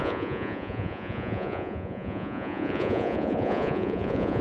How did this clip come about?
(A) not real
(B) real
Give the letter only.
A